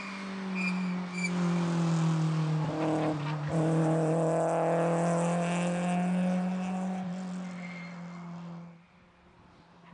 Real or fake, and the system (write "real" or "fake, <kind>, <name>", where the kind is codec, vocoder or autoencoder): real